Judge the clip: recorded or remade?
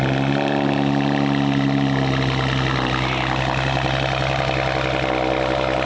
recorded